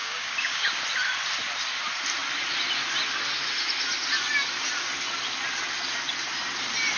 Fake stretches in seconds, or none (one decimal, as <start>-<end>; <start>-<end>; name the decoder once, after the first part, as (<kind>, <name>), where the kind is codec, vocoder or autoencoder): 0.0-0.8 (codec, DAC)